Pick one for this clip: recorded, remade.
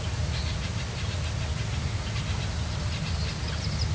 recorded